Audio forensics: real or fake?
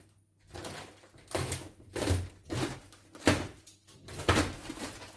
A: real